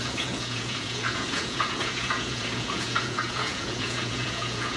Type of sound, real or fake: fake